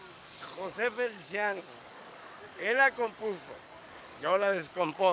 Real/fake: fake